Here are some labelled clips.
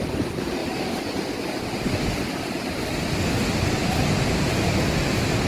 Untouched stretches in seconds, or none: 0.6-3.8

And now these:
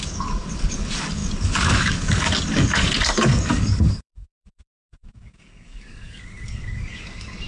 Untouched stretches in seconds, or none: none